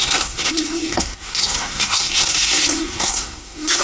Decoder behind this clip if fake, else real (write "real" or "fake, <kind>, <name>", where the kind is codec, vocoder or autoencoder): fake, codec, SNAC